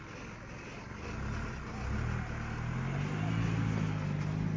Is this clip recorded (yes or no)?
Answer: yes